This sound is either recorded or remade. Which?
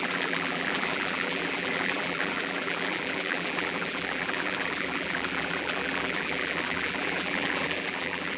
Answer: remade